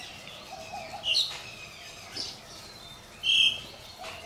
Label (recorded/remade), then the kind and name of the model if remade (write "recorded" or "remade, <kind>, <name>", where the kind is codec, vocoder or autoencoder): recorded